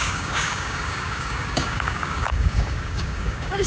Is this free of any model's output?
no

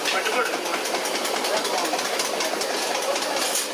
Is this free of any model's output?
yes